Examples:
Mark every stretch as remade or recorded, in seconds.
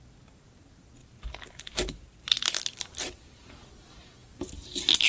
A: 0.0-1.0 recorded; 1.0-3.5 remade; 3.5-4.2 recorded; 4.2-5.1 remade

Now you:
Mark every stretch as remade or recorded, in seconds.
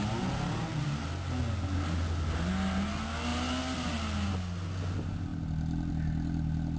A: 0.0-6.8 recorded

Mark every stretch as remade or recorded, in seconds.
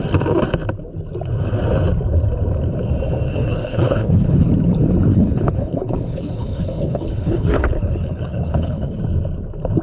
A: 0.0-3.3 recorded; 3.3-4.5 remade; 4.5-5.1 recorded; 5.1-9.0 remade; 9.0-9.8 recorded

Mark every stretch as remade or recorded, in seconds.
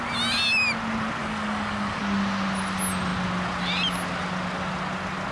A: 0.0-1.2 recorded; 1.2-2.0 remade; 2.0-5.3 recorded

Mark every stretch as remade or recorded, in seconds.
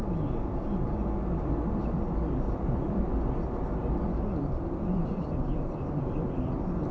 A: 0.0-1.8 recorded; 1.8-3.0 remade; 3.0-4.4 recorded; 4.4-6.9 remade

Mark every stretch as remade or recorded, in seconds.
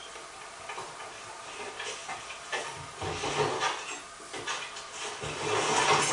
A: 0.0-1.4 remade; 1.4-2.0 recorded; 2.0-3.1 remade; 3.1-6.1 recorded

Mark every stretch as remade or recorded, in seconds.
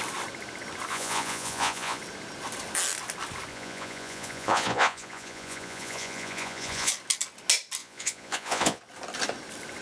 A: 0.0-0.9 recorded; 0.9-2.0 remade; 2.0-3.5 recorded; 3.5-6.9 remade; 6.9-7.8 recorded; 7.8-8.8 remade; 8.8-9.8 recorded